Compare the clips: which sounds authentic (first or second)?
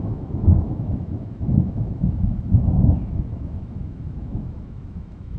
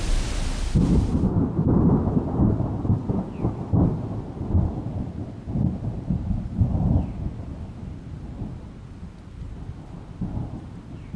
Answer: second